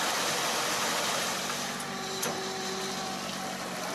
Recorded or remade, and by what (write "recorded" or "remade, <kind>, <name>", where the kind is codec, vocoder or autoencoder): recorded